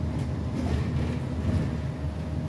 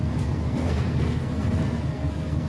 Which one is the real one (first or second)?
first